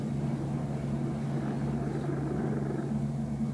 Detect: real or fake real